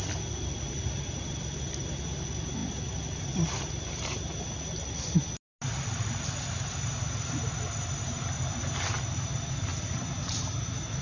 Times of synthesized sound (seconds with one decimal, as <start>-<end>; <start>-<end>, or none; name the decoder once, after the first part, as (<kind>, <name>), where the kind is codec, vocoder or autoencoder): none